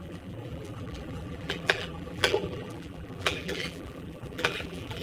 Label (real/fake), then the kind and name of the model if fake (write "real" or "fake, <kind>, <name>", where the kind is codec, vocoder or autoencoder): fake, vocoder, BigVGAN v2